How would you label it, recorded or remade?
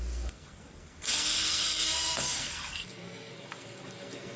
remade